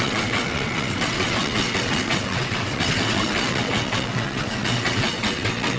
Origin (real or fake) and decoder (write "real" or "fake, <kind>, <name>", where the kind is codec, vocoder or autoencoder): fake, vocoder, WaveNeXt